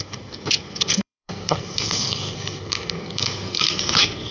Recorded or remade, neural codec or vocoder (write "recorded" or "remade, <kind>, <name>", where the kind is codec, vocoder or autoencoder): remade, codec, SNAC